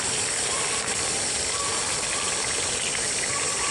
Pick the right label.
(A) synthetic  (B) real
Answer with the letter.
B